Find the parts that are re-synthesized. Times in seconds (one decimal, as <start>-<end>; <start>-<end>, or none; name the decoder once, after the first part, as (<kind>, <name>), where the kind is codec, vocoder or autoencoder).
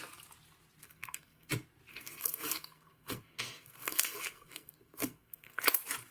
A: 0.8-1.5 (codec, SNAC); 1.9-5.6